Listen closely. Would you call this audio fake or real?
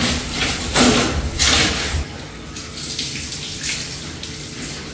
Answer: real